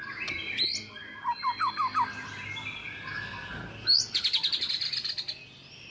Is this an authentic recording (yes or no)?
yes